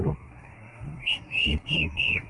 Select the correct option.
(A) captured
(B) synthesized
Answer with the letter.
B